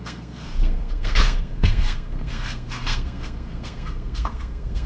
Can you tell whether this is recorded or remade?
remade